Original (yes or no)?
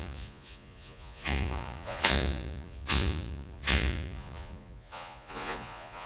no